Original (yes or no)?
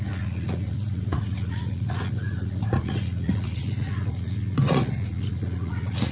no